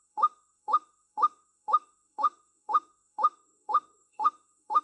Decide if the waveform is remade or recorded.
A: remade